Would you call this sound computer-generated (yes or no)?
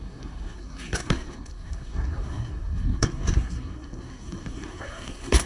yes